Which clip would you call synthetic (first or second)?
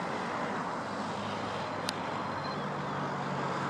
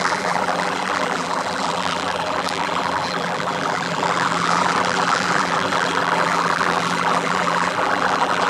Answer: second